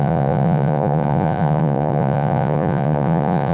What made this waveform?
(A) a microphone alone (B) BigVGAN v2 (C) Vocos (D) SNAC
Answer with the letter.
C